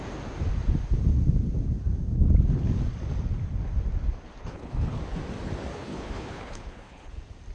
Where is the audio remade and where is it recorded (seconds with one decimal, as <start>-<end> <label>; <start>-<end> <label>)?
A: 0.0-4.4 recorded; 4.4-5.0 remade; 5.0-5.7 recorded; 5.7-7.1 remade; 7.1-7.5 recorded